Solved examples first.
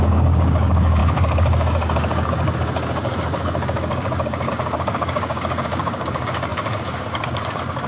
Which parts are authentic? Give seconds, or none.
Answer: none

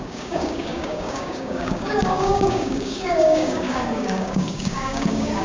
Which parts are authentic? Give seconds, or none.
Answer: none

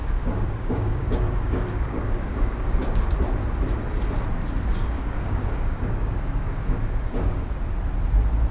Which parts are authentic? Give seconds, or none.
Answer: 3.2-4.8; 7.5-8.5

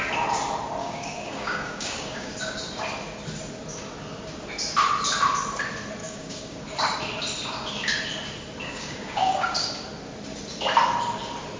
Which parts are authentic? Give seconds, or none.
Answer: 0.0-0.8; 2.3-6.0; 6.6-8.6; 9.7-11.6

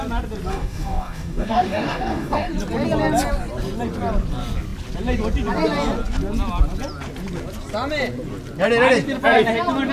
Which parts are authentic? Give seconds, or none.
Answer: 0.0-0.5; 2.5-9.9

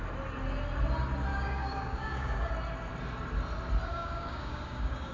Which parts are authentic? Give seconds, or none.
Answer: 0.0-1.3; 2.5-3.9